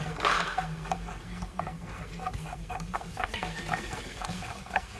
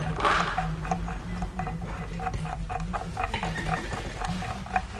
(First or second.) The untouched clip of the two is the second